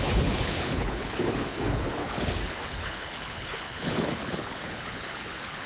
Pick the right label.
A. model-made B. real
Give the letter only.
A